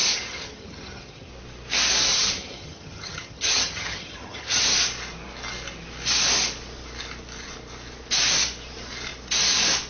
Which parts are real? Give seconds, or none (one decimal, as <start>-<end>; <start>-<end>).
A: 1.3-2.1; 4.6-9.9